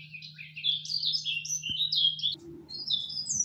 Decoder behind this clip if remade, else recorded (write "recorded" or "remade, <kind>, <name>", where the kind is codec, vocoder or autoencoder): recorded